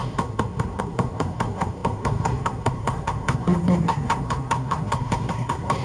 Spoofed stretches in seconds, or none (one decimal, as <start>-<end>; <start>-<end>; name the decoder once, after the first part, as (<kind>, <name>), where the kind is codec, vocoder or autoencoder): 0.0-5.8 (codec, SNAC)